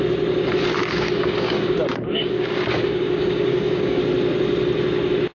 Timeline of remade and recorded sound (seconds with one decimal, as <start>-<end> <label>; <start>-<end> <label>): 0.0-0.8 recorded; 0.8-4.0 remade; 4.0-5.4 recorded